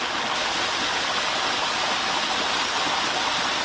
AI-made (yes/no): no